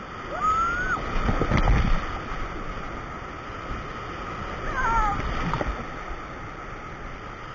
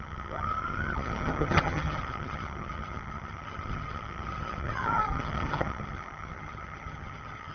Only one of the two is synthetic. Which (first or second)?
second